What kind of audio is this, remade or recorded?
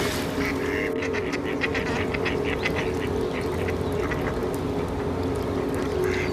recorded